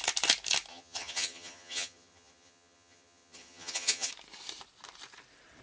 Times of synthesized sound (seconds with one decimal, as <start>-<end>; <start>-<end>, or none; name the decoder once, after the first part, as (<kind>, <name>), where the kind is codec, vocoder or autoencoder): 0.7-4.1 (vocoder, HiFi-GAN)